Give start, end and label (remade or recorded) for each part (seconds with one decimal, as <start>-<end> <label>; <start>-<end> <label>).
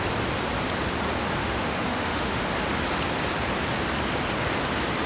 0.0-1.4 recorded; 1.4-2.4 remade; 2.4-5.1 recorded